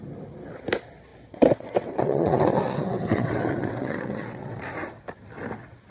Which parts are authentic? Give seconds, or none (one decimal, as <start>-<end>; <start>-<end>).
0.0-1.1; 4.6-5.9